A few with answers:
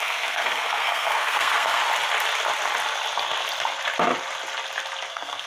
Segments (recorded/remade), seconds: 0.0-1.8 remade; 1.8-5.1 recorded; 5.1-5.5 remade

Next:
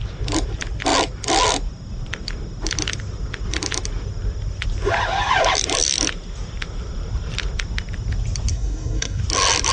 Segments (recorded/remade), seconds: 0.0-8.5 recorded; 8.5-9.2 remade; 9.2-9.7 recorded

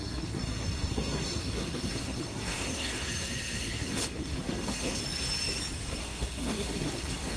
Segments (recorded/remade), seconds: 0.0-5.0 remade; 5.0-5.9 recorded; 5.9-7.4 remade

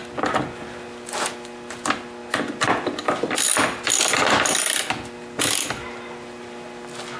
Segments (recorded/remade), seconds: 0.0-7.2 recorded

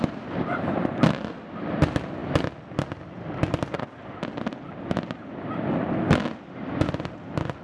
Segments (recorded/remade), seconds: 0.0-7.6 recorded

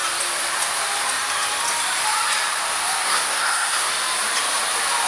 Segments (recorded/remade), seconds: 0.0-3.0 recorded; 3.0-3.9 remade; 3.9-5.1 recorded